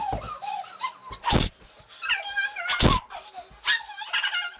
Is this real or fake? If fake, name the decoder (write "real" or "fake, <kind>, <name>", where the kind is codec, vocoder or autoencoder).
real